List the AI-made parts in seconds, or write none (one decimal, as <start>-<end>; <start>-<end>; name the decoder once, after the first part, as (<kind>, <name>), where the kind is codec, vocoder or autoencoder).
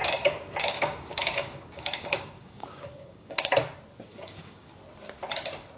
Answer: 0.0-3.5 (codec, DAC); 4.1-4.7